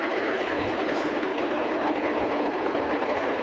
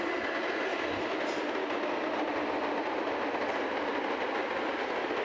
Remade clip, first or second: first